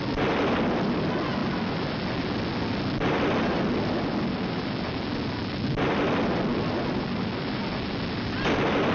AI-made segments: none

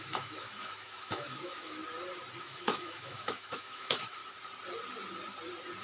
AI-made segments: 0.0-1.8 (autoencoder, DAC-VAE); 2.4-4.2

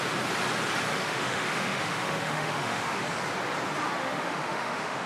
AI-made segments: 0.9-3.0 (autoencoder, DAC-VAE); 4.0-5.1

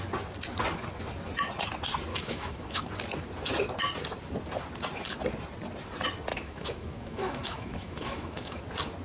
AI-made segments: 2.1-2.8 (autoencoder, DAC-VAE); 6.3-8.6

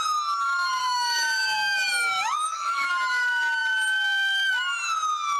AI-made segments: 0.8-2.9 (autoencoder, DAC-VAE)